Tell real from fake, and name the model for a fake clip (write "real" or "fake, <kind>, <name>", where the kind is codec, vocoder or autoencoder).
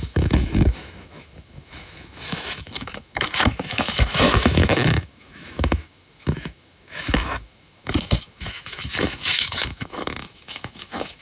fake, autoencoder, DAC-VAE